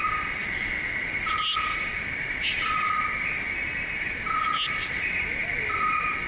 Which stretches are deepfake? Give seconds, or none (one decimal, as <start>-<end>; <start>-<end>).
none

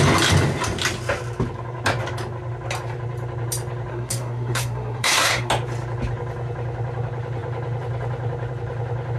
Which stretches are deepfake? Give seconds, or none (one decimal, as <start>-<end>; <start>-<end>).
3.9-5.5

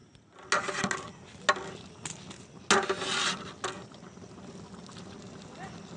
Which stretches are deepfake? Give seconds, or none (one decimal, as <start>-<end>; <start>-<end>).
none

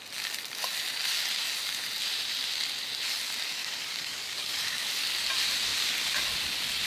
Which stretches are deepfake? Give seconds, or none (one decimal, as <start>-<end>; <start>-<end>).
3.6-4.9

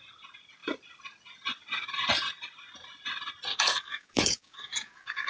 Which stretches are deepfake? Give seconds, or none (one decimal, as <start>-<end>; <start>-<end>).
3.5-5.3

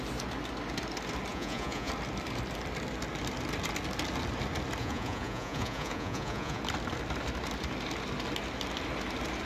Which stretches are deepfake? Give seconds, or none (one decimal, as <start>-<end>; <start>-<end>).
1.3-1.9; 4.8-6.6

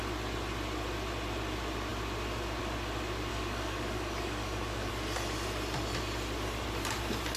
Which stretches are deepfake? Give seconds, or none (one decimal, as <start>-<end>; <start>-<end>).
3.3-4.9

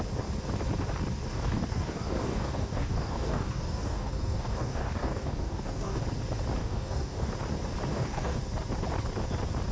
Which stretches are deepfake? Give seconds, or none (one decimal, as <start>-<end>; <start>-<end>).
1.3-6.0; 6.6-7.3; 7.9-8.4